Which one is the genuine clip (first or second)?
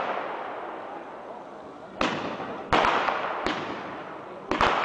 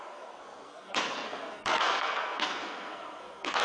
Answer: first